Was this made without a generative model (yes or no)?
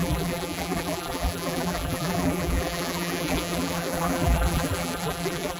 no